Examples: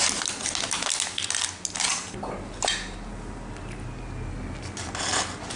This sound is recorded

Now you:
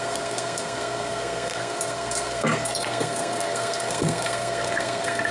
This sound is remade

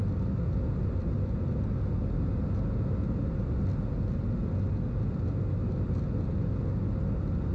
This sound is recorded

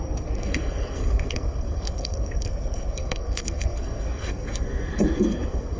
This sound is remade